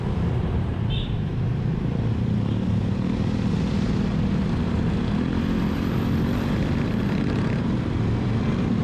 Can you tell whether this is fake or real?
fake